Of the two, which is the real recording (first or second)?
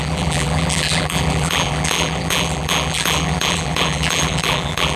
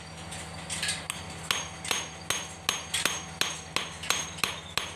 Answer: second